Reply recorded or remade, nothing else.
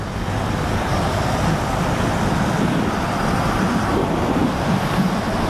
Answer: recorded